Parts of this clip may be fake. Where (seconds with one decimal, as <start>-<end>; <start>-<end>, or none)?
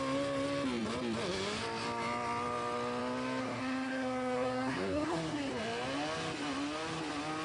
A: 3.4-5.5